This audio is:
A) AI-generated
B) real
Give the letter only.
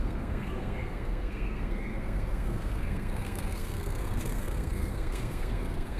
A